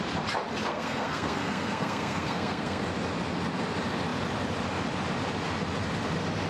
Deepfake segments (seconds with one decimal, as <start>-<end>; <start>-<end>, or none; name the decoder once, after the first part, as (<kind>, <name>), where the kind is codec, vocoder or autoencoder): 0.7-2.8 (codec, SNAC)